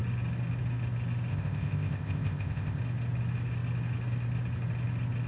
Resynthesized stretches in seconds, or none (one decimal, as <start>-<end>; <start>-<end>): 1.3-2.8